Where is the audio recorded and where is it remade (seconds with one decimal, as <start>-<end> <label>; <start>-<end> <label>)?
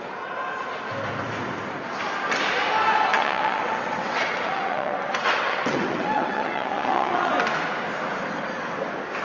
0.0-3.1 recorded; 3.1-7.3 remade; 7.3-9.2 recorded